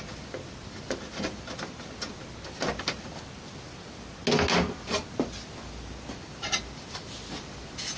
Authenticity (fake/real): real